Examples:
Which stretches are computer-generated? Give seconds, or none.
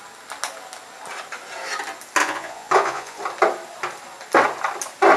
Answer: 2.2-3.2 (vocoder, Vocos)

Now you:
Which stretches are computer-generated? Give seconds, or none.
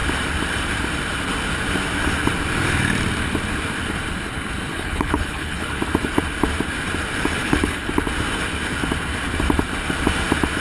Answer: 4.7-5.8 (codec, HILCodec); 7.4-7.9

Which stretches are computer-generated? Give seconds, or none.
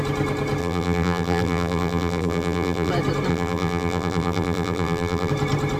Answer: 0.6-2.9 (vocoder, BigVGAN v2); 3.3-5.3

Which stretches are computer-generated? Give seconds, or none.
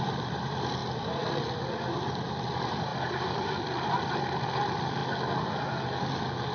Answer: 0.0-5.0 (vocoder, BigVGAN v2)